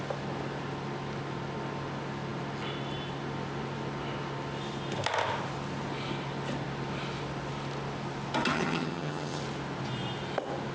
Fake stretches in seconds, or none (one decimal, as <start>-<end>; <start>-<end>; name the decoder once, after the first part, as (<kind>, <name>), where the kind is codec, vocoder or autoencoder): 8.5-9.4 (vocoder, HiFi-GAN)